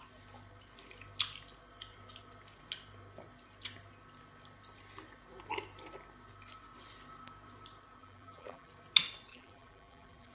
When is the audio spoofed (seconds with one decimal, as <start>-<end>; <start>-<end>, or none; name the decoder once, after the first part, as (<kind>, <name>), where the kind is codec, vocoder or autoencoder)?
8.0-8.7 (vocoder, BigVGAN v2); 9.3-10.3